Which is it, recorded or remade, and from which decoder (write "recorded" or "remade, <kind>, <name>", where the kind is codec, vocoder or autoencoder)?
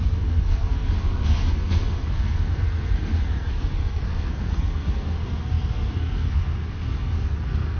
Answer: remade, codec, SNAC